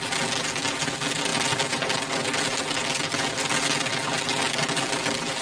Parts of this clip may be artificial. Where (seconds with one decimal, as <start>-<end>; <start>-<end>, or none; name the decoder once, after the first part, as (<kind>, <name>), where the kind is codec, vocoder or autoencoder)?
none

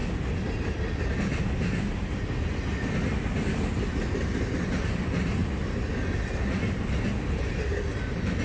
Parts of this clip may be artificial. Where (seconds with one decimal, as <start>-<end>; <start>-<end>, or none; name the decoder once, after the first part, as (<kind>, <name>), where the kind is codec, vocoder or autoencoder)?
none

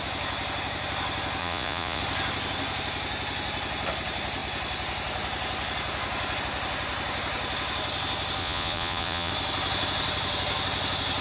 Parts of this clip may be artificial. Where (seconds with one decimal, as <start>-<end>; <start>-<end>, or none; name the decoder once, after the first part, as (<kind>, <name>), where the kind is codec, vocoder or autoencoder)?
1.4-2.0 (vocoder, Vocos); 8.4-9.3

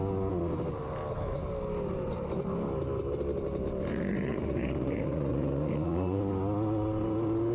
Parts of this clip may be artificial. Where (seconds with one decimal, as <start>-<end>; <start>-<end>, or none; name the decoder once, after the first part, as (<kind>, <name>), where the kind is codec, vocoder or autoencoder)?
3.9-6.2 (vocoder, Vocos)

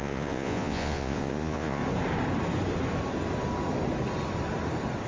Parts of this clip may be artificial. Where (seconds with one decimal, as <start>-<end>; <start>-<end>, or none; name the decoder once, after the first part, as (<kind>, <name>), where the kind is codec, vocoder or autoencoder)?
0.0-1.8 (vocoder, Vocos)

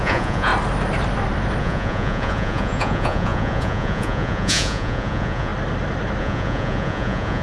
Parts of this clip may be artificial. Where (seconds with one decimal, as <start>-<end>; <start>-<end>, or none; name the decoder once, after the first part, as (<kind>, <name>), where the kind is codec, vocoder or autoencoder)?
0.0-0.5 (vocoder, Vocos); 1.6-5.5; 6.2-7.4